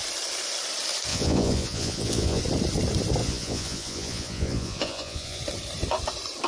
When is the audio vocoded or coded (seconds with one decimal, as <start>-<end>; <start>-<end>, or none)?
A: 1.1-2.4; 3.2-5.4